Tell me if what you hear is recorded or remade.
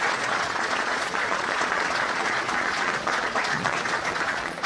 remade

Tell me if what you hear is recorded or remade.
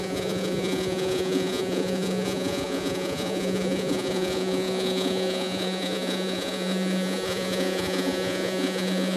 remade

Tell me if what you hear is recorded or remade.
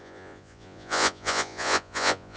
remade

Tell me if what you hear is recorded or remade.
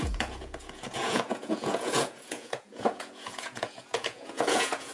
remade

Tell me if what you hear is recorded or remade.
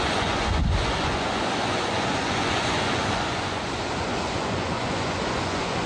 remade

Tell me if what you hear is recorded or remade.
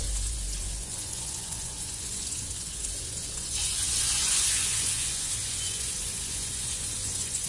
remade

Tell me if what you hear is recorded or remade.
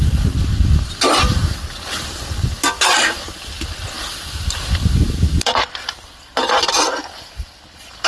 recorded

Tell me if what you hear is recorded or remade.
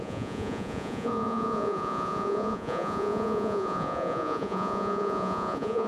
remade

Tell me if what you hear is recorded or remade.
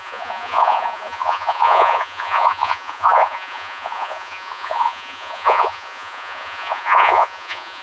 remade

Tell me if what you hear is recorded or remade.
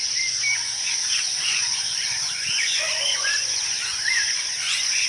remade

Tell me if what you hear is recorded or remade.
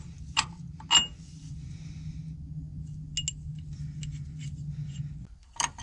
recorded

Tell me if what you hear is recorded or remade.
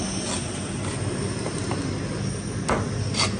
recorded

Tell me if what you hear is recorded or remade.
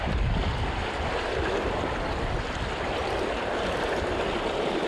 recorded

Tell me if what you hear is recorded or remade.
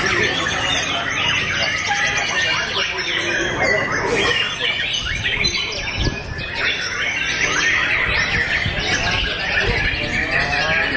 recorded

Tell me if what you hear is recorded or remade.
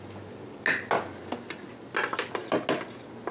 recorded